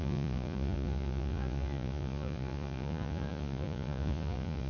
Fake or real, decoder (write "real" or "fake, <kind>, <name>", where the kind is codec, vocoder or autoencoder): fake, vocoder, Vocos